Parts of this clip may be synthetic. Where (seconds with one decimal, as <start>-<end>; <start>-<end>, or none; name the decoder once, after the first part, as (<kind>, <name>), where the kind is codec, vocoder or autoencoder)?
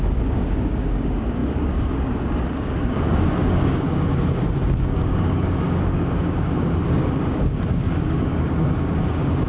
0.0-9.5 (codec, DAC)